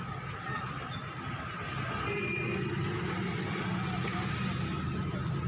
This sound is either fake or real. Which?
real